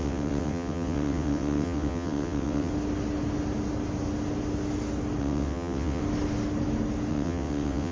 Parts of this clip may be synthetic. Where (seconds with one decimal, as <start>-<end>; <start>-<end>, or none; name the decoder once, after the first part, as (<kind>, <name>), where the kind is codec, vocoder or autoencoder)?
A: 0.0-2.7 (vocoder, WaveNeXt); 5.2-6.0; 7.1-7.9

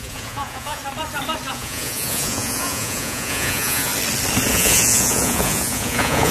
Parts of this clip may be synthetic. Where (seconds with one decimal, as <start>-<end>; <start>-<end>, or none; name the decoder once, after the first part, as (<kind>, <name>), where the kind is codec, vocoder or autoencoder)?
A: 0.0-0.8 (vocoder, Vocos); 1.5-3.9; 4.5-6.3

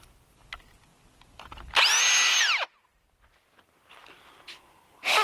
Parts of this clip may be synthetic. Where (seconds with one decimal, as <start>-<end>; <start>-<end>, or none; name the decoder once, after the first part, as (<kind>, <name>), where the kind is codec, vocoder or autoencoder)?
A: none